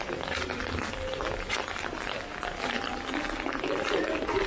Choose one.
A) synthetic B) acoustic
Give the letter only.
B